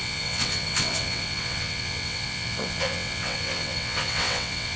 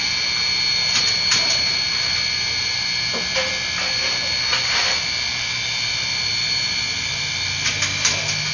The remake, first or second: first